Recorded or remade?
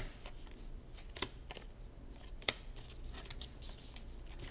recorded